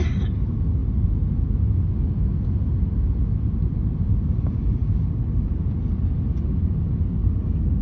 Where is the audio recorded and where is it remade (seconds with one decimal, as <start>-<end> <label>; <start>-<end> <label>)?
0.0-7.8 recorded